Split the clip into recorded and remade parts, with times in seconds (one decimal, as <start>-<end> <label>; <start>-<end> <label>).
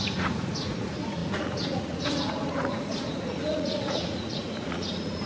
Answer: 0.0-5.3 remade